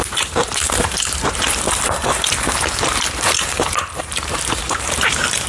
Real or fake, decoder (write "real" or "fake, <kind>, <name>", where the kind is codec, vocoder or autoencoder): fake, vocoder, BigVGAN v2